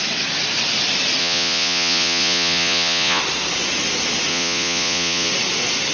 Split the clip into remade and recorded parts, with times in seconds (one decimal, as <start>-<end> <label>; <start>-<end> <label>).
0.0-1.2 recorded; 1.2-3.2 remade; 3.2-4.3 recorded; 4.3-5.3 remade; 5.3-5.9 recorded

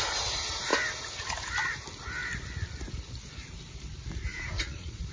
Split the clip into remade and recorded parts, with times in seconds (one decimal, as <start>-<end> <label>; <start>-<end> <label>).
0.0-4.3 recorded; 4.3-5.1 remade